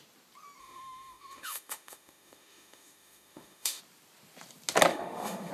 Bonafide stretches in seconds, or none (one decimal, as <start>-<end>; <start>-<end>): 0.0-0.6; 3.8-4.9